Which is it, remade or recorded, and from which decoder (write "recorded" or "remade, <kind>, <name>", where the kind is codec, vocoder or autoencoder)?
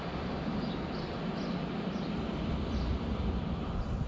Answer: recorded